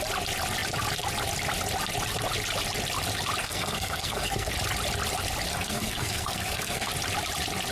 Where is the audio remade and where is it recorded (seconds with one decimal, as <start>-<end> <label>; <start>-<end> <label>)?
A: 0.0-3.4 recorded; 3.4-4.5 remade; 4.5-5.5 recorded; 5.5-6.9 remade; 6.9-7.7 recorded